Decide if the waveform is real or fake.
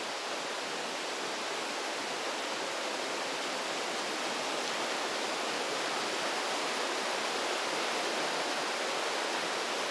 real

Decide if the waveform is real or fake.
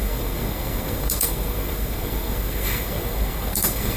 fake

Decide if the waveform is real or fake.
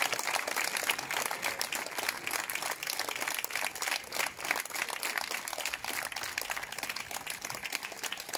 real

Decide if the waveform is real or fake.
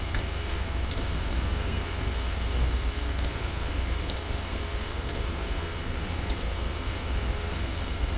fake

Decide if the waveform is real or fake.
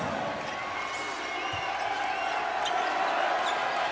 real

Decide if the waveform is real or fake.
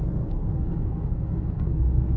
fake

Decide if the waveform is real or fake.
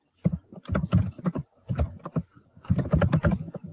real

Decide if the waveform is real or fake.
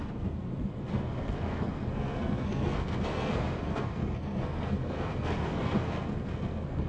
fake